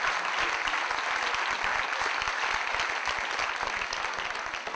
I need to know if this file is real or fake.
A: real